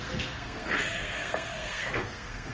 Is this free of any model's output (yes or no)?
no